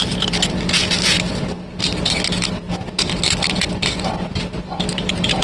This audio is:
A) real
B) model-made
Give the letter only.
A